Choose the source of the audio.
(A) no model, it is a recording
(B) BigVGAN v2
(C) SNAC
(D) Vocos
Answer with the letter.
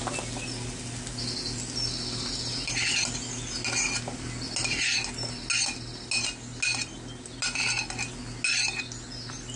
A